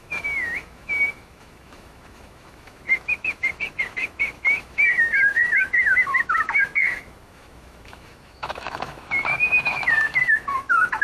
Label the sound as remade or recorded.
remade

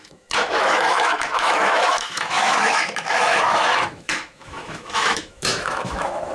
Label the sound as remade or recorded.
remade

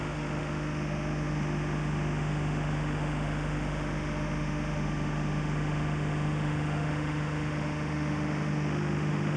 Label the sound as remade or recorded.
remade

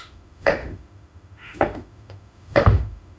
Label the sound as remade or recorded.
remade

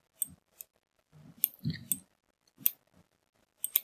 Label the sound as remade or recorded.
recorded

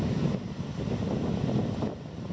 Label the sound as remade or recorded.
recorded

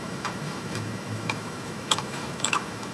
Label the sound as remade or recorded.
remade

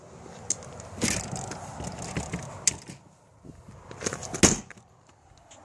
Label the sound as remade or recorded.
recorded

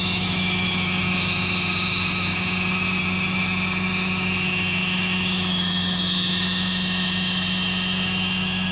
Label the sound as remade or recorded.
remade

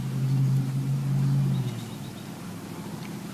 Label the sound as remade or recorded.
recorded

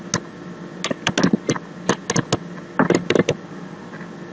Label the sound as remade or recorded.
recorded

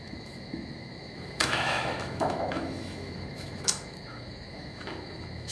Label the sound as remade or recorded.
remade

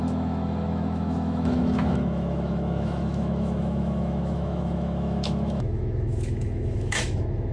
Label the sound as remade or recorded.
remade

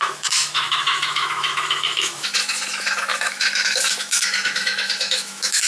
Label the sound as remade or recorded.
remade